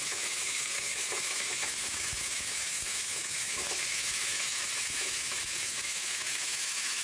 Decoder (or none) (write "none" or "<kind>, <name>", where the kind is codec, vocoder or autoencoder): autoencoder, DAC-VAE